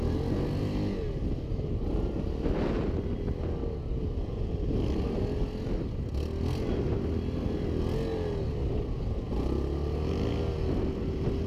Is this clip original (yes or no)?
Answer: yes